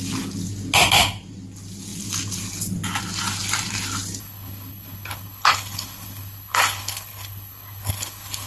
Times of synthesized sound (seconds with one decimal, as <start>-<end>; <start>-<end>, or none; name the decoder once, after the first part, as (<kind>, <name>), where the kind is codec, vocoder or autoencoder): 4.2-8.5 (codec, HILCodec)